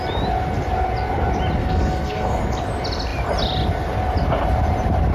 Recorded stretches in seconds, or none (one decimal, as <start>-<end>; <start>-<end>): 0.0-1.6; 2.4-5.1